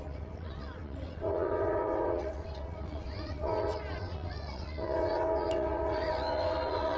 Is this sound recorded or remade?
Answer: remade